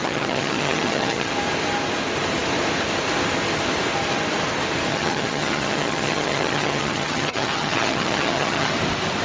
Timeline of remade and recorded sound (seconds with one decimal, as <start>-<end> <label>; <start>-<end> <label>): 0.0-1.3 remade; 1.3-4.9 recorded; 4.9-8.7 remade; 8.7-9.2 recorded

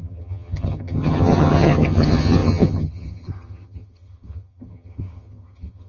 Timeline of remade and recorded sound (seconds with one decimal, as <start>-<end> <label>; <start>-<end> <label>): 0.0-5.9 remade

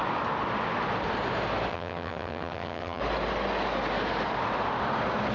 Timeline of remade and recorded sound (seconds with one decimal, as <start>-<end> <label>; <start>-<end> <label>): 0.0-1.7 recorded; 1.7-3.0 remade; 3.0-5.3 recorded

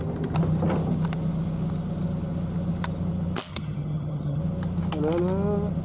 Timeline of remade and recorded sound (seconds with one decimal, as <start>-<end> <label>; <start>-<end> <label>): 0.0-3.5 recorded; 3.5-4.4 remade; 4.4-5.8 recorded

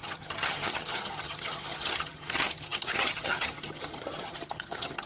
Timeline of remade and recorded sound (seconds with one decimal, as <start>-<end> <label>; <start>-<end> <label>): 0.0-5.1 remade

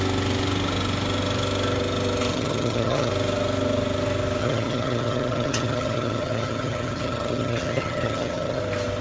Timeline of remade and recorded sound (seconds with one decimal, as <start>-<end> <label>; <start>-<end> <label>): 0.0-2.3 recorded; 2.3-3.1 remade; 3.1-4.4 recorded; 4.4-8.6 remade; 8.6-9.0 recorded